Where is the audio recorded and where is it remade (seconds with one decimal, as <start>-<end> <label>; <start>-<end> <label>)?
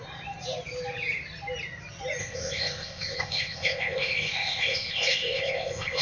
0.0-2.2 recorded; 2.2-6.0 remade